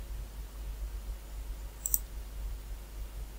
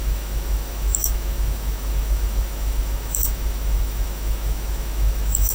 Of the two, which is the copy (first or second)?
second